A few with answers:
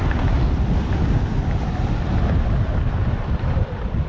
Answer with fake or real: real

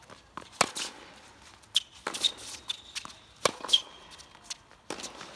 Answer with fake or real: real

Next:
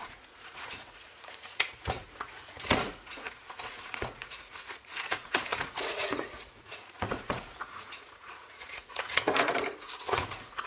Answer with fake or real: fake